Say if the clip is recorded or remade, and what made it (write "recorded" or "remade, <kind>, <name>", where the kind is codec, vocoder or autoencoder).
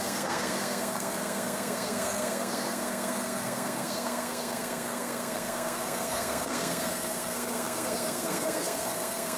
remade, codec, SNAC